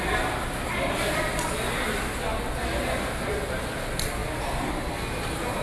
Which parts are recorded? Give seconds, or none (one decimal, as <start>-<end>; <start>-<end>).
0.0-5.6